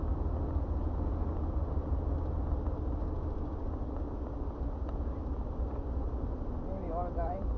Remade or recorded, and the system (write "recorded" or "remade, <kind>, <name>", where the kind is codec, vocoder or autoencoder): recorded